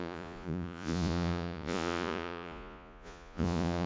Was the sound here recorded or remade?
remade